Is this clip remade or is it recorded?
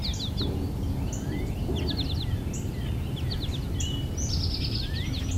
recorded